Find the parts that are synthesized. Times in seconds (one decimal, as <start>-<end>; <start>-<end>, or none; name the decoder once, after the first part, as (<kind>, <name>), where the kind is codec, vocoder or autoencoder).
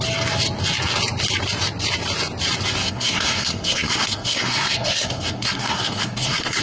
2.8-6.6 (codec, SNAC)